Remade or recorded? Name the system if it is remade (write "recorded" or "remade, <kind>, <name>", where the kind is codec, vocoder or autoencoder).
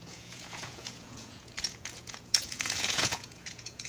remade, vocoder, Vocos